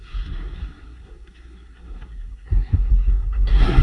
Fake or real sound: fake